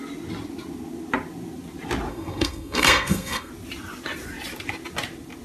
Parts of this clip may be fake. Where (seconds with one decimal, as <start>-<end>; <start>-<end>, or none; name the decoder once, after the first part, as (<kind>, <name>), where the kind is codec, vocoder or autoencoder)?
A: 2.1-3.5 (codec, SNAC)